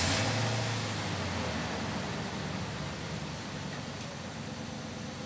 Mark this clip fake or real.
real